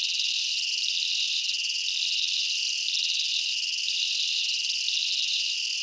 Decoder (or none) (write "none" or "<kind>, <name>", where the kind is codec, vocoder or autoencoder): none